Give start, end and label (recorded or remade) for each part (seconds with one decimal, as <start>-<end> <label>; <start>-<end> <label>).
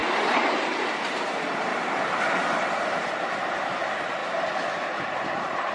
0.0-0.9 recorded; 0.9-1.7 remade; 1.7-2.3 recorded; 2.3-5.7 remade